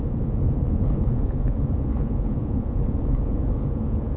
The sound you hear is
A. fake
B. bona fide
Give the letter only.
A